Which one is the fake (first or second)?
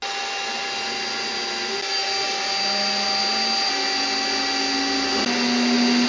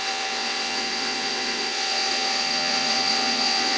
second